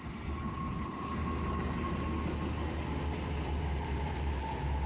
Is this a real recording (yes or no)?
yes